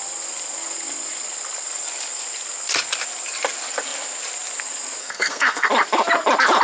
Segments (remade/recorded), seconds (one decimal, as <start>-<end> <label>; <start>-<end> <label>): 0.0-5.0 recorded; 5.0-5.7 remade; 5.7-6.6 recorded